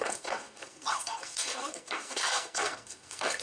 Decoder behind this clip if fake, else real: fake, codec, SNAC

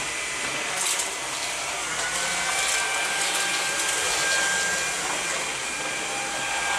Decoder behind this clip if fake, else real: real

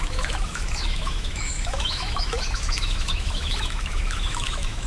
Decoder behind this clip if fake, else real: fake, autoencoder, DAC-VAE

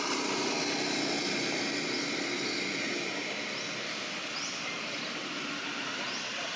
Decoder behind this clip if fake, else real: real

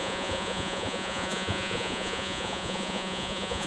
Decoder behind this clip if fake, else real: fake, vocoder, Vocos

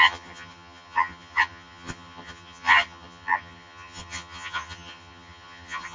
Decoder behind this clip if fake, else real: fake, vocoder, HiFi-GAN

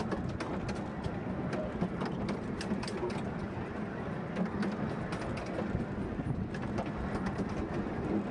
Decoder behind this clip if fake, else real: real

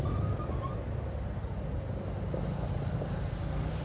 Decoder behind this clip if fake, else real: real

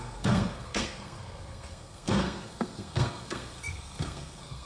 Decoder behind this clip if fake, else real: fake, codec, SNAC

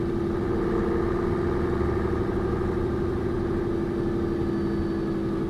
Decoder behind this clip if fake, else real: real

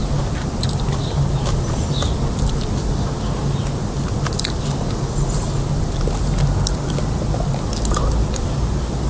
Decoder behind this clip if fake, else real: real